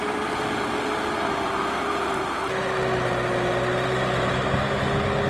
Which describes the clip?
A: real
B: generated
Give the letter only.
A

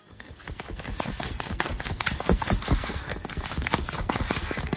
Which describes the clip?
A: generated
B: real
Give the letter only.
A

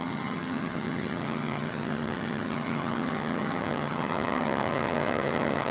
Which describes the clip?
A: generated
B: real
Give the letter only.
A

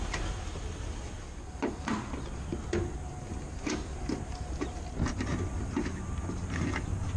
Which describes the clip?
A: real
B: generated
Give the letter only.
A